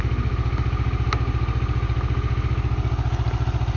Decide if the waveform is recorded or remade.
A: recorded